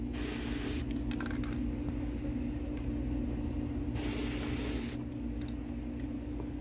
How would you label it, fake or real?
real